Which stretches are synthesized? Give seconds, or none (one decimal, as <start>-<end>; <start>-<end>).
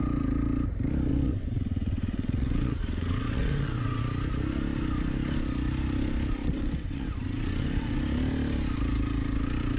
1.1-4.0; 6.4-8.0